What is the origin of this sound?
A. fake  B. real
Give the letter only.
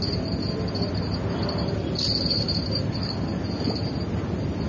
B